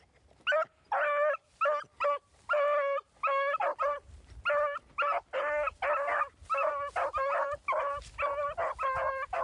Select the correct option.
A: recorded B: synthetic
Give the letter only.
A